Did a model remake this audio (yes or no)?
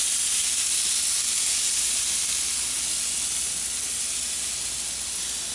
no